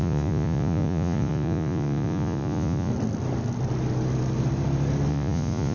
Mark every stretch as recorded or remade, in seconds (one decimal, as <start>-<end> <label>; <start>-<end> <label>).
0.0-2.9 remade; 2.9-5.1 recorded; 5.1-5.7 remade